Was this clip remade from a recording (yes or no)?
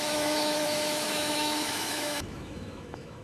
yes